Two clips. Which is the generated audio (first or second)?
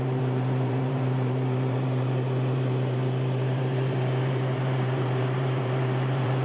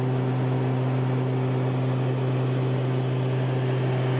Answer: first